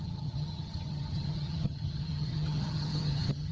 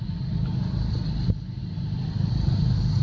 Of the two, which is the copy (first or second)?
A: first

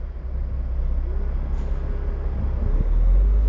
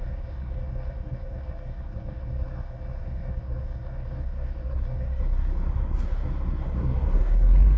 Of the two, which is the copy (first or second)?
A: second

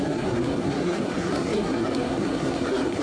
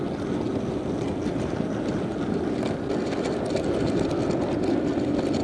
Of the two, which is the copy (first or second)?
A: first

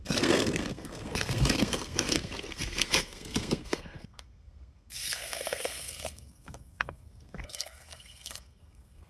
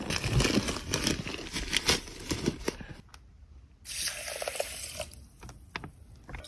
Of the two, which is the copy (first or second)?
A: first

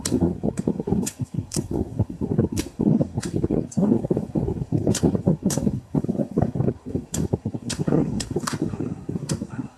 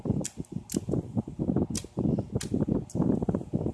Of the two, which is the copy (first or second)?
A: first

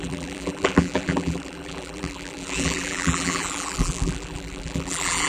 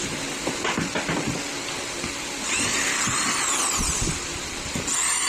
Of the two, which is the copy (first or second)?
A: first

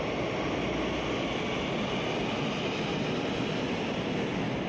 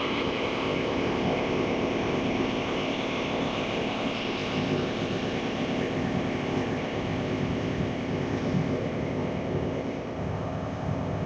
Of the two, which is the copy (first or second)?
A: second